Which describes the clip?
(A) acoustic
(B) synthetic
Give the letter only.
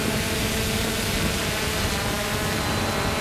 A